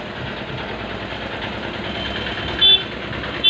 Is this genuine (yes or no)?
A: yes